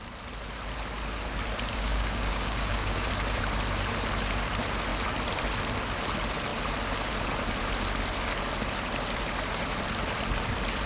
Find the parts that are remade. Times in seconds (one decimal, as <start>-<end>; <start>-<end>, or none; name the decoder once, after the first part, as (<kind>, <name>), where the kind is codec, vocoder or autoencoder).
1.7-3.1 (codec, DAC)